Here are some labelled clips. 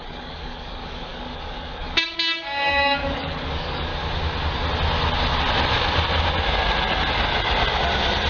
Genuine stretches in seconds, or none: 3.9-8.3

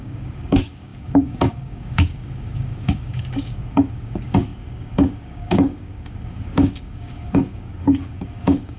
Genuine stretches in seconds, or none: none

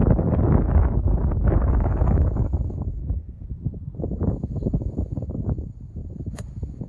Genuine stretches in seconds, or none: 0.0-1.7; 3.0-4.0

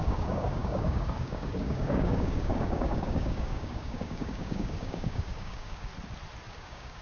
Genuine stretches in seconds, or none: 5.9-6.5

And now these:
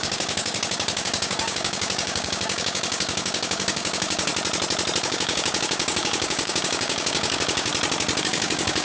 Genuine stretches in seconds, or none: 4.3-5.0; 7.7-8.2